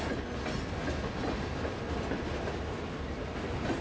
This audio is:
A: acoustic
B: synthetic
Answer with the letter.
A